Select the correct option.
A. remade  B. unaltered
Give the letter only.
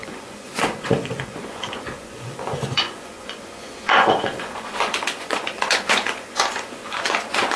A